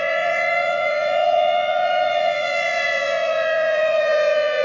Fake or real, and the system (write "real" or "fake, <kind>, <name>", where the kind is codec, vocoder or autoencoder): fake, vocoder, Vocos